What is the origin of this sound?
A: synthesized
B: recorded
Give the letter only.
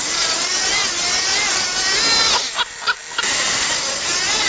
B